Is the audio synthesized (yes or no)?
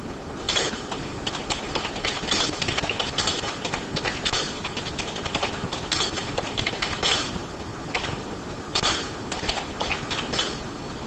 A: no